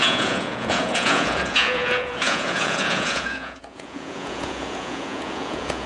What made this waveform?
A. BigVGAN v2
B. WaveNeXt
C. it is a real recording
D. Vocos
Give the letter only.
D